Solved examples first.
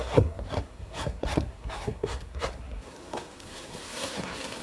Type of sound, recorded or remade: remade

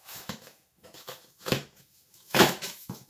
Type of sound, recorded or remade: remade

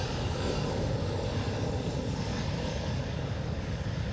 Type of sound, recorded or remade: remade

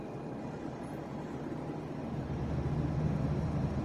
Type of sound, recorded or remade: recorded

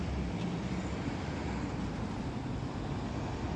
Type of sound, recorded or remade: recorded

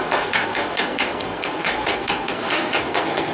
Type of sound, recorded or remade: remade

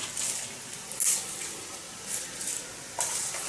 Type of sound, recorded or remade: recorded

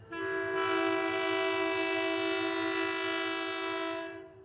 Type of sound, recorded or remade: recorded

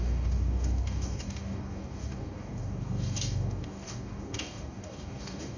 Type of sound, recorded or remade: remade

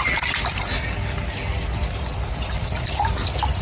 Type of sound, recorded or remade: recorded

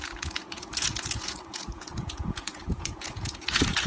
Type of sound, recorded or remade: remade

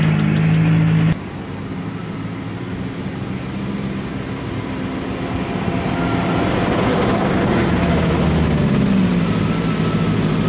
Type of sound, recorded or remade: recorded